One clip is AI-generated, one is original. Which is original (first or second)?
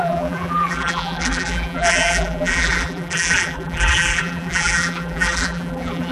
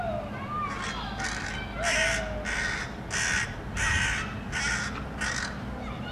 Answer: second